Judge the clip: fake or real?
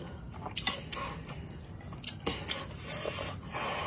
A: real